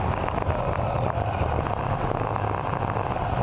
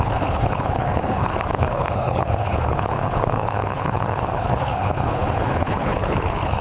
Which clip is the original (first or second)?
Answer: first